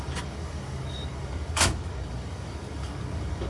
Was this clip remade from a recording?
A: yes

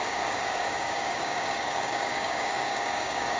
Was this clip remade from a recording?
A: yes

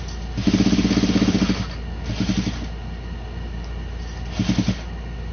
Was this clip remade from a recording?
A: no